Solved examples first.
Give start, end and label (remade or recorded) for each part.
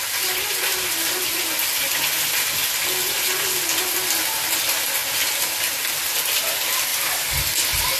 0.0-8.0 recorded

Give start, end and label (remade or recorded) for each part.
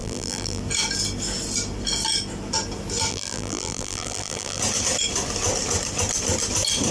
0.0-0.6 remade; 0.6-3.1 recorded; 3.1-4.6 remade; 4.6-6.9 recorded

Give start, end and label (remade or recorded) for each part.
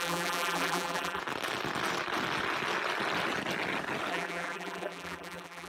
0.0-1.2 remade; 1.2-4.1 recorded; 4.1-5.7 remade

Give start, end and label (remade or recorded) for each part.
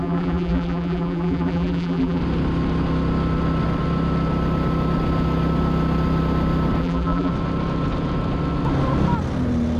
0.0-2.2 remade; 2.2-6.8 recorded; 6.8-7.3 remade; 7.3-9.8 recorded